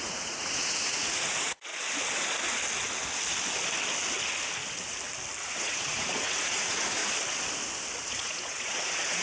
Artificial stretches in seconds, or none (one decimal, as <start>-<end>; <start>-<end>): 0.0-1.7; 5.4-7.0; 8.1-9.2